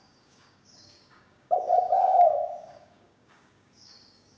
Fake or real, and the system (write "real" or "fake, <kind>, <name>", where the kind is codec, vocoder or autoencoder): fake, codec, DAC